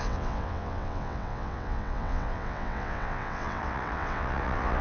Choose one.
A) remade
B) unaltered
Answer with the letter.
A